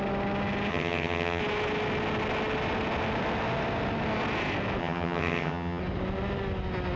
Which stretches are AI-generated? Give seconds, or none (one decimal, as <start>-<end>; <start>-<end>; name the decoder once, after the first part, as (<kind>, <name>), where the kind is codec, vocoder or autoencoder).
0.7-1.4 (vocoder, HiFi-GAN); 4.8-5.8